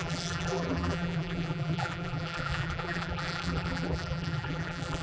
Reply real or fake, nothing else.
fake